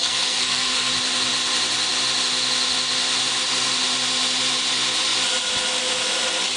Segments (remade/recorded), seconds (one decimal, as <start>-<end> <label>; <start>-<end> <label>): 0.0-0.9 remade; 0.9-6.6 recorded

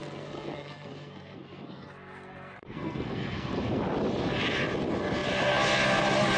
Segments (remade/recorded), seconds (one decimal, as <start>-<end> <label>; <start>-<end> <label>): 0.0-3.8 remade; 3.8-6.4 recorded

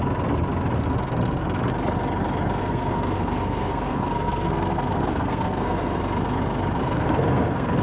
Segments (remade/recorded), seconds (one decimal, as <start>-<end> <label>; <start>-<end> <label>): 0.0-2.6 recorded; 2.6-6.0 remade; 6.0-6.8 recorded; 6.8-7.8 remade